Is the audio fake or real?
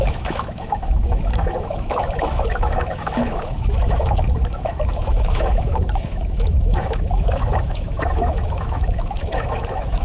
fake